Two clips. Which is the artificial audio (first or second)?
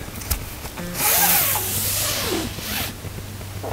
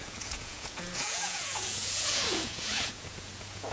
second